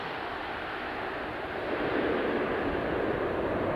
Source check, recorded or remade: recorded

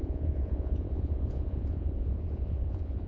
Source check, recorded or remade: remade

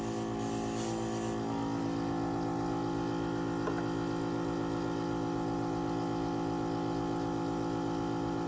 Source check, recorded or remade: recorded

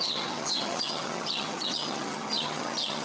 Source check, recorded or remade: remade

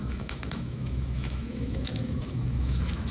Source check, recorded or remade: remade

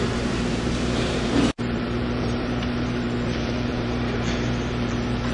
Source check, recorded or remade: remade